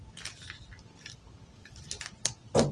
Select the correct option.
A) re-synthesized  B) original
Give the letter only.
B